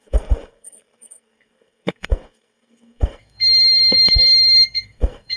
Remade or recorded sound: remade